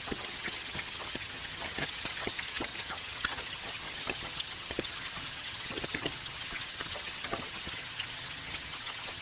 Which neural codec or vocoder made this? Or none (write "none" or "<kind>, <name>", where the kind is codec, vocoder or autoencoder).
vocoder, HiFi-GAN